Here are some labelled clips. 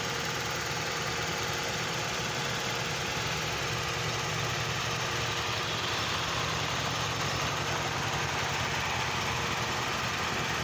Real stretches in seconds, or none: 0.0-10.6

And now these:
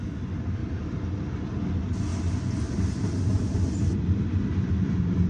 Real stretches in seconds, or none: 0.0-5.3

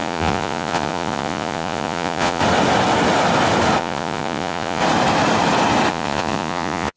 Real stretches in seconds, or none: 2.4-3.8; 4.8-5.9